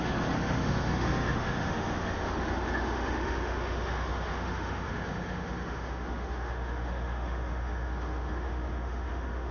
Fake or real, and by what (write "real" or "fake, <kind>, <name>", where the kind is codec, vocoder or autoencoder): fake, autoencoder, DAC-VAE